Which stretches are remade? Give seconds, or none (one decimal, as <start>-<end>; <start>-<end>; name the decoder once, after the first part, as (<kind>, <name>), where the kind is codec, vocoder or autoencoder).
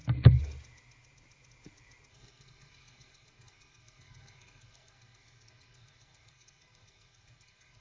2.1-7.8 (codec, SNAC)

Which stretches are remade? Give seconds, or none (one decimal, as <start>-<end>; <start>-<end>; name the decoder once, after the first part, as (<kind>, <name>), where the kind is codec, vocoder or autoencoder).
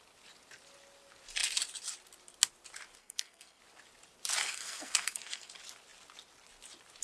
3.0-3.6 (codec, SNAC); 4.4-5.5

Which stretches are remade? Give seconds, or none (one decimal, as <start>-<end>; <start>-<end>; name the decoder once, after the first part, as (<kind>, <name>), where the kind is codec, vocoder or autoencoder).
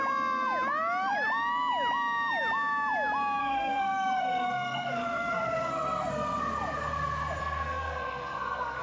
3.4-6.4 (codec, SNAC); 7.4-8.8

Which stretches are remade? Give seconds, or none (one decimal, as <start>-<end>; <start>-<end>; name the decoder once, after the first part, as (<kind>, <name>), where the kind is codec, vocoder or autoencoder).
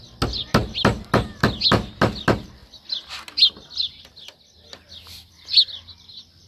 none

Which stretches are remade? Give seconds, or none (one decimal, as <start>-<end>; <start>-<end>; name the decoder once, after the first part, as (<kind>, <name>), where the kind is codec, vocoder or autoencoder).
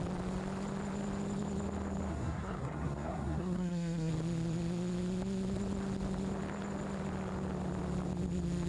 2.1-4.1 (codec, SNAC)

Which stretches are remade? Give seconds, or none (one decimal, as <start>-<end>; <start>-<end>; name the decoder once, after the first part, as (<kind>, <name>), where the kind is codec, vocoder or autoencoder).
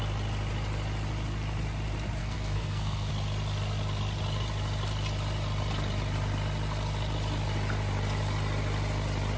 2.2-3.1 (codec, SNAC)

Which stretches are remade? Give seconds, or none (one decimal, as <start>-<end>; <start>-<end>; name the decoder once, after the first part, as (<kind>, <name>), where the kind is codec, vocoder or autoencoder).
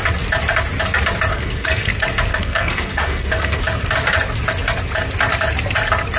1.3-1.9 (codec, SNAC); 2.3-3.6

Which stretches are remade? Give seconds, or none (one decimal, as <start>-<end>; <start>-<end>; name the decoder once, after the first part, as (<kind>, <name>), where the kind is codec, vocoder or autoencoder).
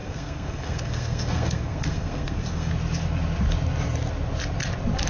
0.0-2.7 (codec, SNAC)